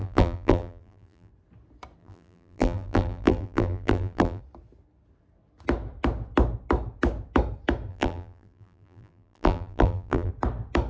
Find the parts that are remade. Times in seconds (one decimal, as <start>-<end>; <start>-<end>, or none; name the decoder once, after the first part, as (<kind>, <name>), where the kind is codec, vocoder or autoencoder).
0.0-1.3 (vocoder, BigVGAN v2); 2.0-4.4; 7.9-10.3